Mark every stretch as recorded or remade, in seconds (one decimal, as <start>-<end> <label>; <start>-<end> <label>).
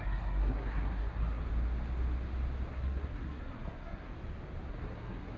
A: 0.0-1.4 remade; 1.4-2.7 recorded; 2.7-4.1 remade; 4.1-4.7 recorded; 4.7-5.4 remade